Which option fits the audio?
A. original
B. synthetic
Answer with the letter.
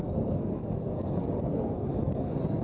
B